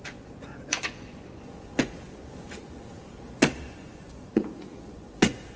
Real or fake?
fake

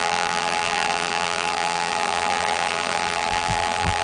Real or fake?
fake